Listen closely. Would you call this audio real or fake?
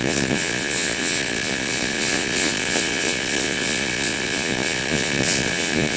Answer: fake